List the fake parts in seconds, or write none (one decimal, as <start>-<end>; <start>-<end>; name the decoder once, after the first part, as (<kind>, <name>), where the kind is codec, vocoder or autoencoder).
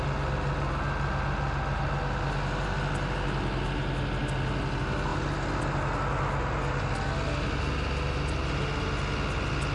none